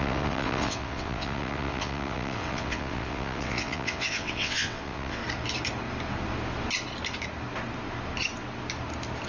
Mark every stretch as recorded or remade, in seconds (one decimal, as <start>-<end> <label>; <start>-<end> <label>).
0.0-5.2 remade; 5.2-9.3 recorded